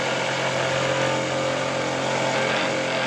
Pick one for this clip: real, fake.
real